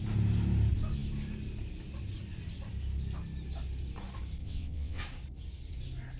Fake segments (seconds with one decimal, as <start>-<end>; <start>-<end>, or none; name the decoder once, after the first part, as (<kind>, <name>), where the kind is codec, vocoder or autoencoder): 4.4-5.0 (vocoder, WaveNeXt)